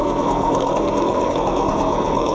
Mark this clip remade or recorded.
remade